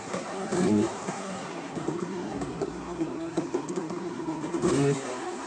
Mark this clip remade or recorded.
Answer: remade